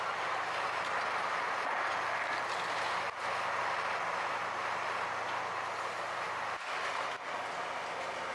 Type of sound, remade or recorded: recorded